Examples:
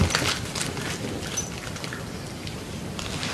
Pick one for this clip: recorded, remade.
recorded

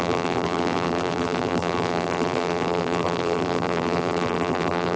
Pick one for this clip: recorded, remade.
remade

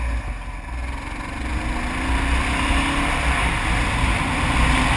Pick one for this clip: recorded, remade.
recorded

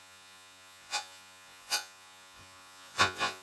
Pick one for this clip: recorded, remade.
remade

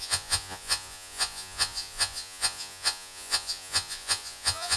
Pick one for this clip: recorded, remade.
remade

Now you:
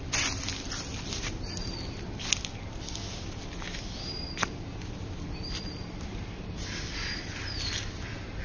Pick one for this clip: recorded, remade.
recorded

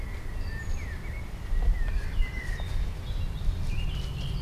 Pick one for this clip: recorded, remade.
recorded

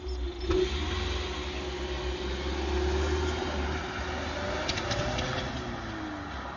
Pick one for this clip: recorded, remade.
recorded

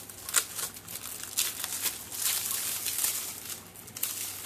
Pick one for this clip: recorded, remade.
recorded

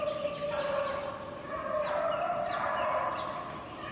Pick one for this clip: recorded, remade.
recorded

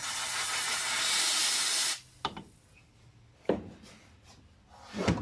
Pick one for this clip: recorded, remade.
recorded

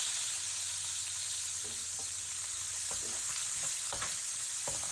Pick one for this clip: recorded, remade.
recorded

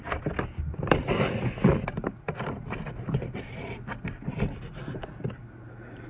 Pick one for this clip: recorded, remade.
recorded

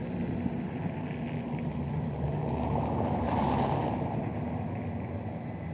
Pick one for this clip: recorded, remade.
recorded